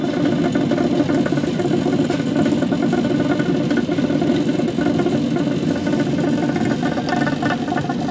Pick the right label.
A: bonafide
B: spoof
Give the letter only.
A